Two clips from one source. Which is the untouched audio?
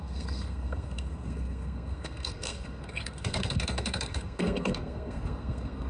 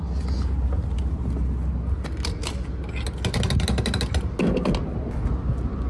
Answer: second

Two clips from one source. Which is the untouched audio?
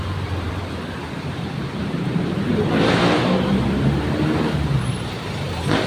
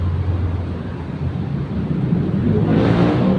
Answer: second